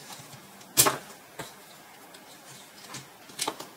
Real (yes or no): yes